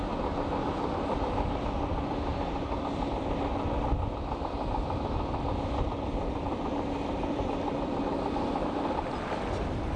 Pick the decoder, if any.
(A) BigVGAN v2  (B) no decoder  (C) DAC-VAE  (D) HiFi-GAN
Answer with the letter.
B